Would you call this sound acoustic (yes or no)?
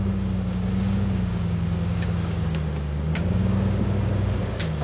no